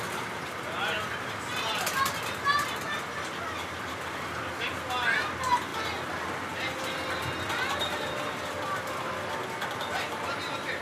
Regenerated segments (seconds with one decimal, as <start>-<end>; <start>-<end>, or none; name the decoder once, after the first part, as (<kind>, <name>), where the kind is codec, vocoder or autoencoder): none